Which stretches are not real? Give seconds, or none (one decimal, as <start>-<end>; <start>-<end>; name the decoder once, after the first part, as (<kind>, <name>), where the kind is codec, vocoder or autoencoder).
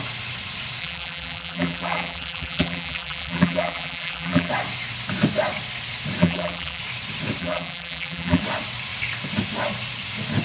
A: 0.8-4.5 (vocoder, BigVGAN v2); 6.2-6.8; 7.4-8.4